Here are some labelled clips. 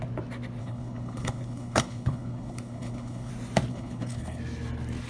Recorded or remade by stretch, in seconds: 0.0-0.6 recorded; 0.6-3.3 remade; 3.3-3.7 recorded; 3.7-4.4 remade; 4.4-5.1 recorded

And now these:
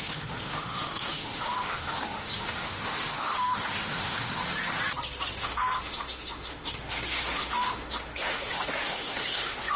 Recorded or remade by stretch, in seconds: 0.0-4.4 remade; 4.4-5.4 recorded; 5.4-9.8 remade

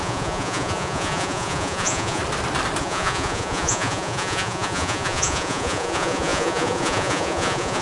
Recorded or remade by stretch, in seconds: 0.0-2.2 remade; 2.2-2.8 recorded; 2.8-7.8 remade

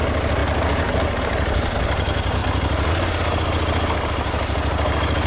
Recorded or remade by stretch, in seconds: 0.0-5.3 recorded

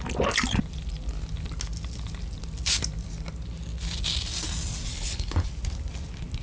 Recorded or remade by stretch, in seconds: 0.0-4.9 recorded; 4.9-5.5 remade; 5.5-6.4 recorded

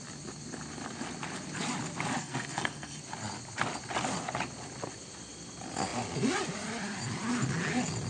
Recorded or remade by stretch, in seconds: 0.0-2.2 recorded; 2.2-3.0 remade; 3.0-8.1 recorded

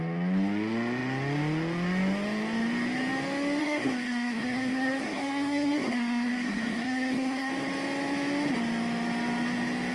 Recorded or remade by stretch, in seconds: 0.0-3.6 recorded; 3.6-7.5 remade; 7.5-9.9 recorded

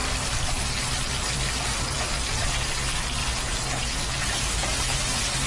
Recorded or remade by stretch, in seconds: 0.0-3.2 remade; 3.2-4.2 recorded; 4.2-5.5 remade